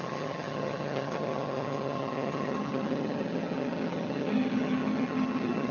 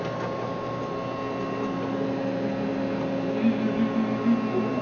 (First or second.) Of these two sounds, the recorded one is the second